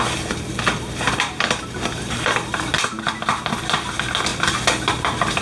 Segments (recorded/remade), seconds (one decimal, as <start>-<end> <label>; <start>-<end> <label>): 0.0-5.4 recorded